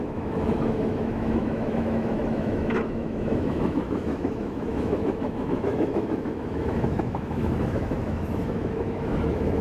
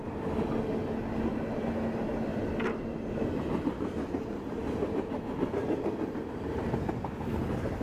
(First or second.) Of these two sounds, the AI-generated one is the first